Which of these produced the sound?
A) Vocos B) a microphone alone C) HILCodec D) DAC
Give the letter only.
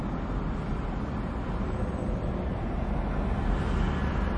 B